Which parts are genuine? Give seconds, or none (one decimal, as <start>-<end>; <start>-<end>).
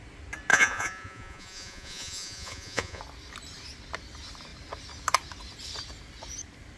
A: 0.0-0.5; 3.0-6.8